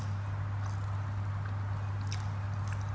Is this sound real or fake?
real